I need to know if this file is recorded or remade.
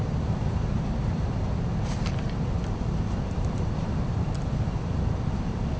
remade